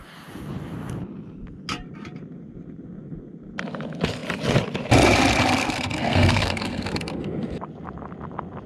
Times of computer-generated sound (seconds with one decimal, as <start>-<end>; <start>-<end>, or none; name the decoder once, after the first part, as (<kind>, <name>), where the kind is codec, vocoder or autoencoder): 5.6-7.2 (codec, SNAC)